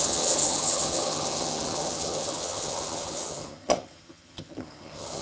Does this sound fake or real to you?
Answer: fake